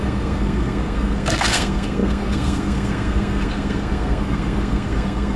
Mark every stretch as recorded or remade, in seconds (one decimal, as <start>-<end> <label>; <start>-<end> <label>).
0.0-5.4 remade